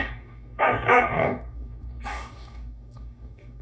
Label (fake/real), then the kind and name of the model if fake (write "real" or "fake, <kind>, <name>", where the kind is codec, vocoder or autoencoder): fake, codec, DAC